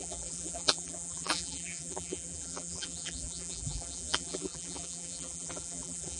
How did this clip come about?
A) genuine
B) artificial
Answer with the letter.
B